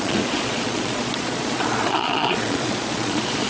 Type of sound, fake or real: fake